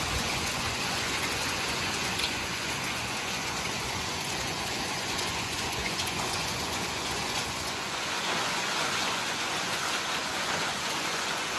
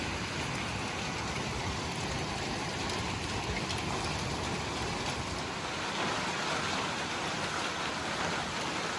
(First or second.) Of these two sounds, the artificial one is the first